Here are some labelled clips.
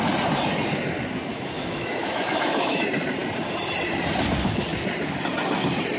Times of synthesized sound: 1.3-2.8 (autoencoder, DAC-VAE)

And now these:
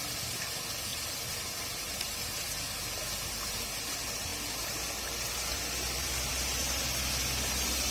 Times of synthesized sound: none

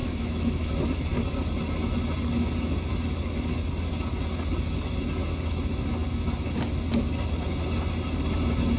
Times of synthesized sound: 0.0-0.7 (autoencoder, DAC-VAE)